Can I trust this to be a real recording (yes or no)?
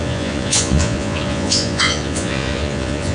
no